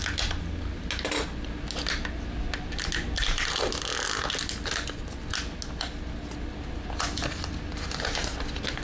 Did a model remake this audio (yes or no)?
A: no